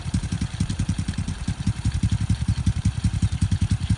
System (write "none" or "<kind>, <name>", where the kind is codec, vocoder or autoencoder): vocoder, BigVGAN v2